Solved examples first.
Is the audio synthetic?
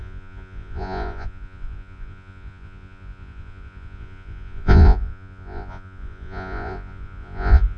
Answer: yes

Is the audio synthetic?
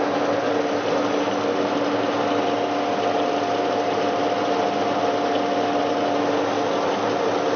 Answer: no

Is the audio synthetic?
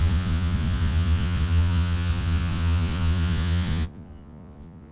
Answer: yes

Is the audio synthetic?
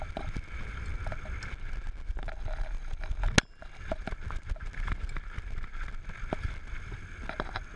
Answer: no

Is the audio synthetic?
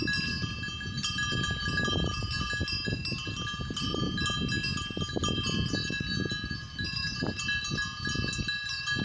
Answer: no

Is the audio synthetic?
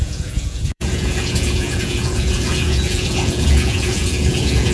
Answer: yes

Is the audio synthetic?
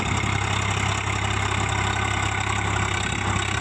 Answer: no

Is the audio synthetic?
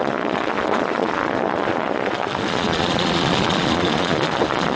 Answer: yes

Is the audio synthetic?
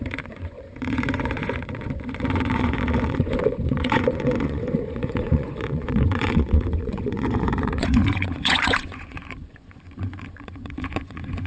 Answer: yes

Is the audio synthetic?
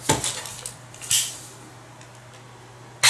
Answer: no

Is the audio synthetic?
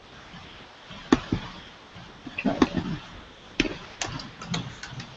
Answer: no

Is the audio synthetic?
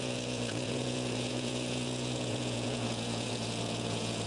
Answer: yes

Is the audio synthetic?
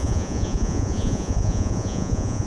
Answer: yes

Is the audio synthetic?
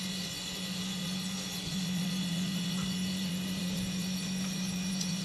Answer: yes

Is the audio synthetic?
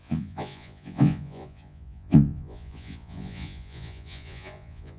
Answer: yes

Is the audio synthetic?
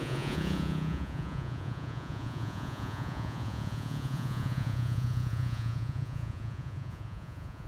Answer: yes